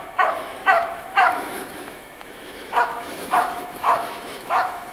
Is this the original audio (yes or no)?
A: no